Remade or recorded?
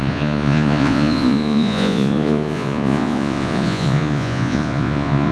remade